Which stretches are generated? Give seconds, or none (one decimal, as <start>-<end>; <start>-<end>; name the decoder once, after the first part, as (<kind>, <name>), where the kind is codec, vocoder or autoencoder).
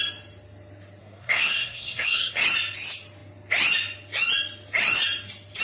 1.0-2.4 (codec, SNAC)